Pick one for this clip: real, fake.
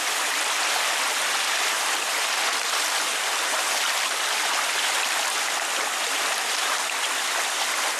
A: real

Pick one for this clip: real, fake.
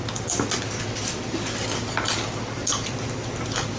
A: real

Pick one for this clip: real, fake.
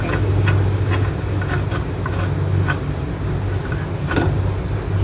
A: real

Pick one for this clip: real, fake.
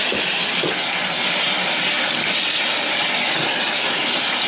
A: real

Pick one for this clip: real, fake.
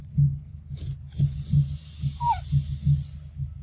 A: real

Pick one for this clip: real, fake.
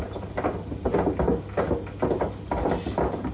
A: real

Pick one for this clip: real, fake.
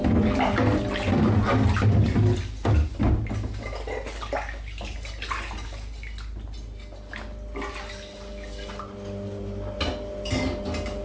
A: real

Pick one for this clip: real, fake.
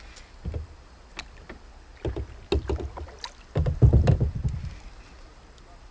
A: real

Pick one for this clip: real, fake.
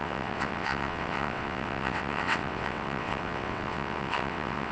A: fake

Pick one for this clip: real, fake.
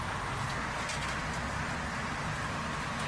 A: real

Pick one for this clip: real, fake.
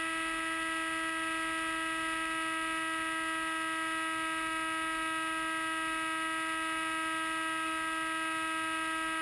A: real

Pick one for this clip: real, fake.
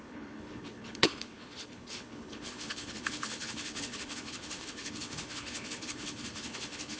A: fake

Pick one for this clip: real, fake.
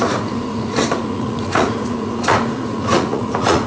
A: fake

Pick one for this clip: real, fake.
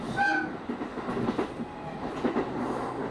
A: real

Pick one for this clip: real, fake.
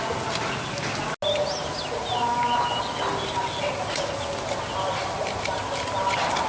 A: real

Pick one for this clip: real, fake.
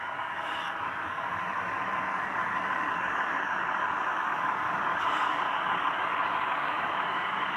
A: fake